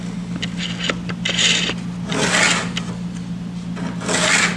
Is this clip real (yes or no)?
yes